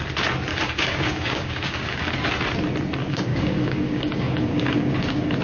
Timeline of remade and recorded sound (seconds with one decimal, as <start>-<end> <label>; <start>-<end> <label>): 0.0-0.5 recorded; 0.5-2.1 remade; 2.1-3.0 recorded; 3.0-5.4 remade